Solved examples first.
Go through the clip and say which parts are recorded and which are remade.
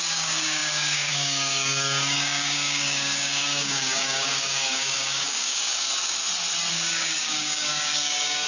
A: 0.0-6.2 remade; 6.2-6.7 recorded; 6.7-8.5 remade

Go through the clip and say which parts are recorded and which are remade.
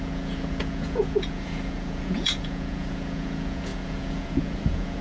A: 0.0-5.0 remade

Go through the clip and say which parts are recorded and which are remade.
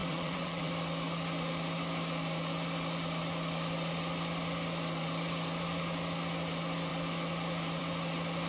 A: 0.0-0.7 remade; 0.7-8.5 recorded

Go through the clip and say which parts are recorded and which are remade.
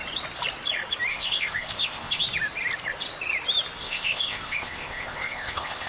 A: 0.0-1.1 recorded; 1.1-2.2 remade; 2.2-3.8 recorded; 3.8-5.9 remade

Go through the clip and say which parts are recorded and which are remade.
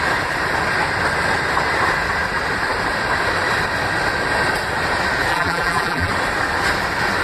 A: 0.0-5.3 recorded; 5.3-6.1 remade; 6.1-7.2 recorded